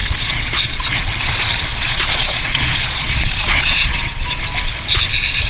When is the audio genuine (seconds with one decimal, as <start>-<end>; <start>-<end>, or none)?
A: 0.9-1.7; 4.4-5.5